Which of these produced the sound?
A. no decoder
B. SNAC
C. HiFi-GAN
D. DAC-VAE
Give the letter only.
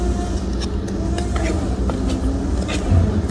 A